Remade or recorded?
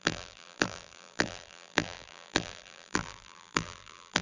remade